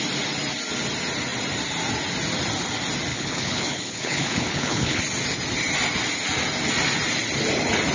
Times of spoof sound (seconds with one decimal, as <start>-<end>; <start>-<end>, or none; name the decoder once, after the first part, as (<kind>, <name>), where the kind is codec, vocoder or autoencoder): 3.1-5.0 (codec, HILCodec)